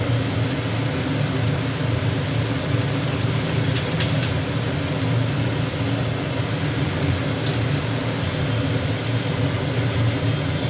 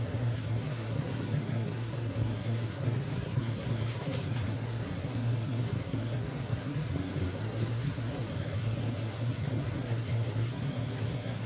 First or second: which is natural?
first